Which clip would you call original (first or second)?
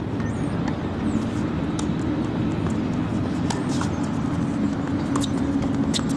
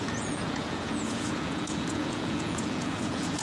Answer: first